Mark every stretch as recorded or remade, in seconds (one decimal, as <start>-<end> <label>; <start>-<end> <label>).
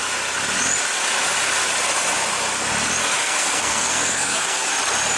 0.0-3.2 recorded; 3.2-4.7 remade; 4.7-5.2 recorded